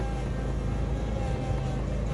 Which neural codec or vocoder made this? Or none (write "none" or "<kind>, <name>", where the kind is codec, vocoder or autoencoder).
none